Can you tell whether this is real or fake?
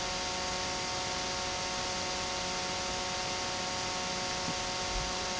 real